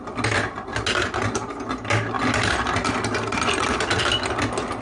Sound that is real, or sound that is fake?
real